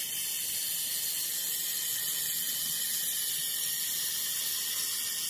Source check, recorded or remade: recorded